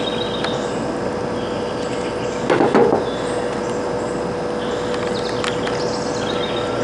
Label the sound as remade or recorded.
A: recorded